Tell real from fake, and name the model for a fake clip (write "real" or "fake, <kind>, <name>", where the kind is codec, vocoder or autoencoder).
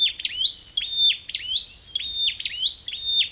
real